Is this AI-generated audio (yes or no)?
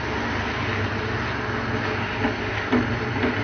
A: no